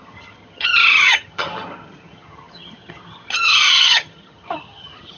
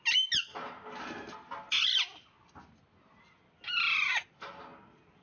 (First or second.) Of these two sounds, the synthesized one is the first